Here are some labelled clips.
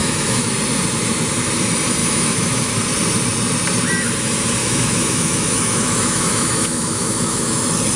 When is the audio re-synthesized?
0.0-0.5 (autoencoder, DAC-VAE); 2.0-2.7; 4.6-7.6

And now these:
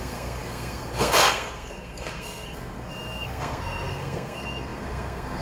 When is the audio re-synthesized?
0.0-5.4 (codec, SNAC)